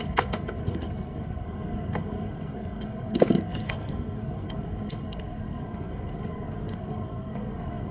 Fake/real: fake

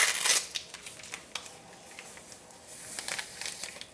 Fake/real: real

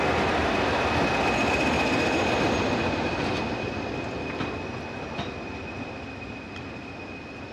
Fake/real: real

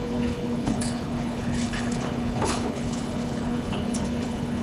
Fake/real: fake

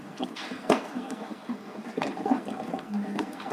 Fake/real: fake